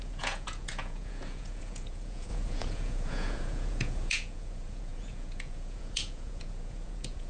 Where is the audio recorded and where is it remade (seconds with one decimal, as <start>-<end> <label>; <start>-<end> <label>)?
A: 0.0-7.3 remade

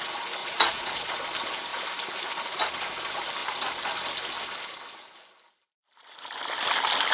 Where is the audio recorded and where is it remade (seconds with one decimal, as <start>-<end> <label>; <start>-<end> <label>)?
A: 0.0-0.4 recorded; 0.4-1.1 remade; 1.1-7.1 recorded

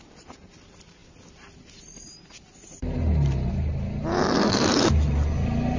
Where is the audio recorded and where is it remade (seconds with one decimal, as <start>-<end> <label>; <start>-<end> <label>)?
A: 0.0-5.8 recorded

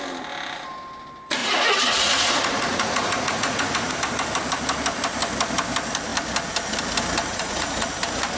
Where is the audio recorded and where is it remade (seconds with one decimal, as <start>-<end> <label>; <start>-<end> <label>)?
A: 0.0-1.4 recorded; 1.4-3.9 remade; 3.9-7.3 recorded; 7.3-7.9 remade; 7.9-8.4 recorded

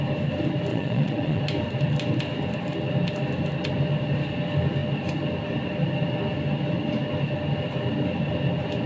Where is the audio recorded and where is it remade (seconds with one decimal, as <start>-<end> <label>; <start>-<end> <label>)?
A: 0.0-0.7 recorded; 0.7-1.4 remade; 1.4-8.9 recorded

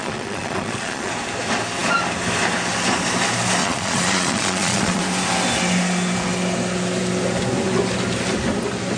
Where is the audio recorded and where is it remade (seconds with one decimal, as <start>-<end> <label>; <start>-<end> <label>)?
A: 0.0-1.1 remade; 1.1-3.6 recorded; 3.6-5.0 remade; 5.0-9.0 recorded

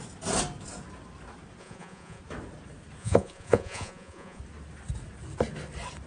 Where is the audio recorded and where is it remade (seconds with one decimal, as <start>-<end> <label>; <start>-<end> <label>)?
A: 0.0-1.6 recorded; 1.6-2.2 remade; 2.2-3.0 recorded; 3.0-4.4 remade; 4.4-6.1 recorded